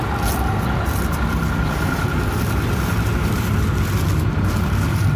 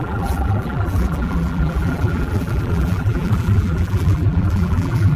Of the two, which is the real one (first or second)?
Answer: first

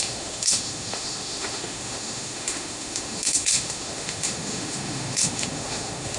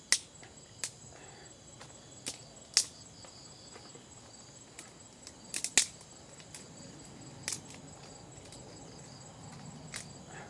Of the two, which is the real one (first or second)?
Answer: second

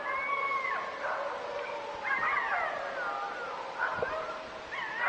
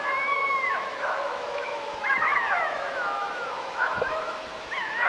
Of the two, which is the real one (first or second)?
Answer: first